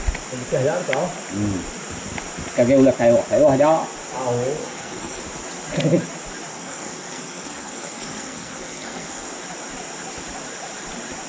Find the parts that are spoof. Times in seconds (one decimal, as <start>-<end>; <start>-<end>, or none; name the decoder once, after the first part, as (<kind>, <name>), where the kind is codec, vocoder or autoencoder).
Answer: 4.6-5.2 (codec, SNAC); 6.5-9.3